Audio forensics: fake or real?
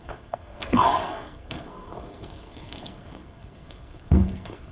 fake